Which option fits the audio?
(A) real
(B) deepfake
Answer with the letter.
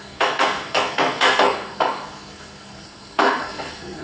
B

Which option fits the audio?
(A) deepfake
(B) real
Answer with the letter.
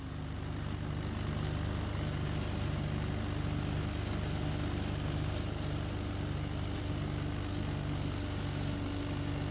B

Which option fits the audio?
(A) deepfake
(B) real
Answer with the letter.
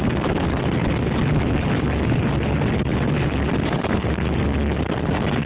B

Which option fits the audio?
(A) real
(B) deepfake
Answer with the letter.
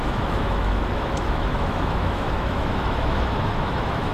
B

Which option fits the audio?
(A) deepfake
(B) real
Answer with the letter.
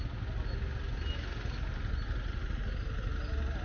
B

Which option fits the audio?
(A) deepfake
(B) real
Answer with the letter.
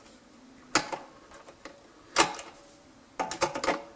B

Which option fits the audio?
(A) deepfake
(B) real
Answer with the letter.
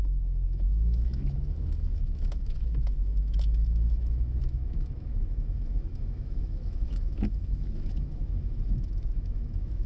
A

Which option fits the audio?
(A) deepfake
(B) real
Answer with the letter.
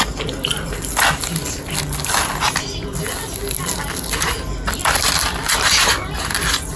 B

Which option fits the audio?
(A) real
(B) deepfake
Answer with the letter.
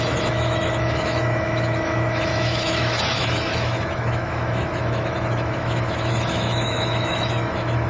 B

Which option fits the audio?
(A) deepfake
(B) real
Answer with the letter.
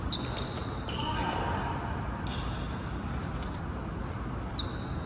B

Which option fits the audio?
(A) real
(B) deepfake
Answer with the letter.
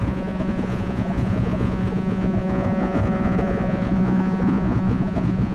B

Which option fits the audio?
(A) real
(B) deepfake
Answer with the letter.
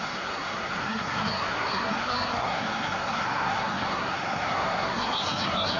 B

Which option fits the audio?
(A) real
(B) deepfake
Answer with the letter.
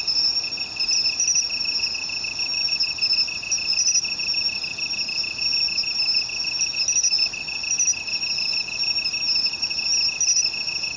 A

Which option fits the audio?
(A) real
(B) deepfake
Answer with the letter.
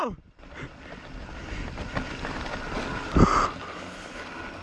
A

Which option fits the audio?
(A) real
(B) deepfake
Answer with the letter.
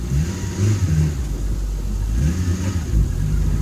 A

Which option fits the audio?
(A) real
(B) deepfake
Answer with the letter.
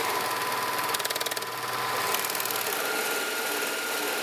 A